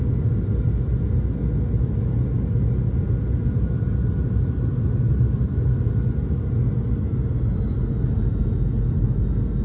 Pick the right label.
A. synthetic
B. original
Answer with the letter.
B